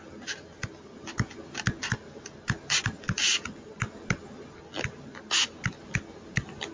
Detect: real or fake real